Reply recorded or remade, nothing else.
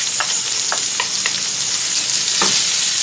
recorded